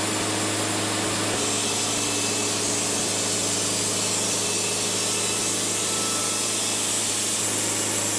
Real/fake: real